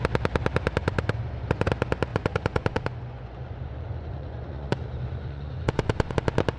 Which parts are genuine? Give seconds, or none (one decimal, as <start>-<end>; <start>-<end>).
0.0-0.8; 1.7-2.1; 6.1-6.6